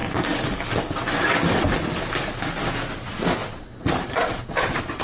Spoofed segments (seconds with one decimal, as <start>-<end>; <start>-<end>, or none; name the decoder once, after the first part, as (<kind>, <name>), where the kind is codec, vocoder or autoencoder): 3.0-5.0 (vocoder, Vocos)